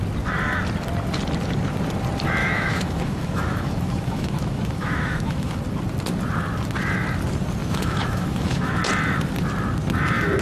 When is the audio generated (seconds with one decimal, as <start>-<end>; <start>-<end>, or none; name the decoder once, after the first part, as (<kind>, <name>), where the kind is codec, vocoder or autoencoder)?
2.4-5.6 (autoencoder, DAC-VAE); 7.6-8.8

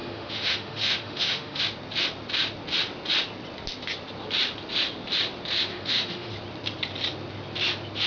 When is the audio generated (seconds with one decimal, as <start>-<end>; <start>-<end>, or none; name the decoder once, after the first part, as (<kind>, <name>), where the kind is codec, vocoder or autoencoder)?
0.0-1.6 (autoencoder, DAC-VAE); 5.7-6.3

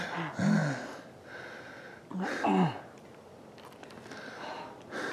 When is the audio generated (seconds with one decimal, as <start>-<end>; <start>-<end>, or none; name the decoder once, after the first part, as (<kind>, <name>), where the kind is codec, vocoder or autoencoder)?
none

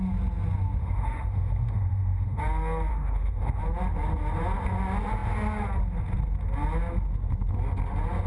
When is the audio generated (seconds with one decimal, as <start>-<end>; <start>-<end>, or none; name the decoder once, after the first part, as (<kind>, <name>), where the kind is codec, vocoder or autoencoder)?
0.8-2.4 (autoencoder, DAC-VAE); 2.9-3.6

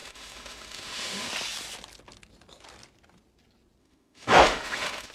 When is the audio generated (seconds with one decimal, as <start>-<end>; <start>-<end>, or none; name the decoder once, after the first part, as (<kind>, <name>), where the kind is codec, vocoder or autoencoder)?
0.0-1.3 (autoencoder, DAC-VAE); 3.8-5.1

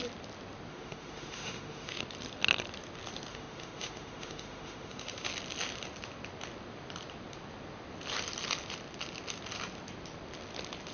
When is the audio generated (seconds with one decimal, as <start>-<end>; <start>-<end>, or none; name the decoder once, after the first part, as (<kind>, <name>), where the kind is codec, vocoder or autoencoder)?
0.7-2.0 (autoencoder, DAC-VAE); 3.3-5.3

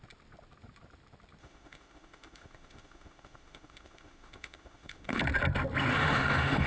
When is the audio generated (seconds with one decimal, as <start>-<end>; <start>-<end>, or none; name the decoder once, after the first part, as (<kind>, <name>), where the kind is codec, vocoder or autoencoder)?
1.4-5.2 (autoencoder, DAC-VAE); 5.9-6.7

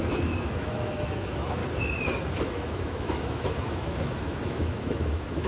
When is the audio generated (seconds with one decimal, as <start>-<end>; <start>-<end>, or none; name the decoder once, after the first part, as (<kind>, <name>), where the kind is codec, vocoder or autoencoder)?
0.0-1.6 (autoencoder, DAC-VAE); 2.4-5.5